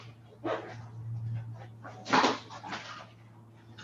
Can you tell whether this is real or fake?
real